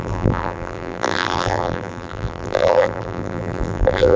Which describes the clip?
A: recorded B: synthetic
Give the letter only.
B